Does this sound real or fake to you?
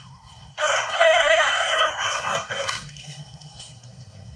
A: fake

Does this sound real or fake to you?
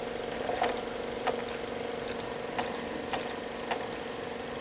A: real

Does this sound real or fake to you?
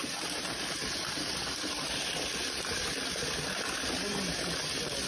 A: real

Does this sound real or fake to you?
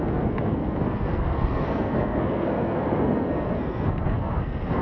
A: fake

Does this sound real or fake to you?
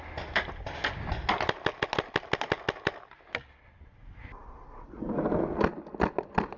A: real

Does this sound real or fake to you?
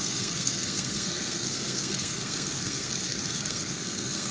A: fake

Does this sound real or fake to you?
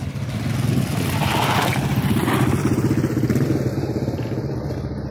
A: real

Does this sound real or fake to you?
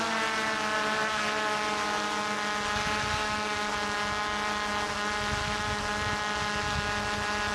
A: real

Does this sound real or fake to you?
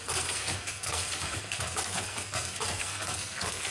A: fake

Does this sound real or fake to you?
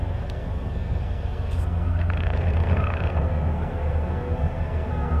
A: fake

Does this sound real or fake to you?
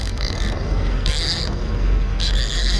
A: fake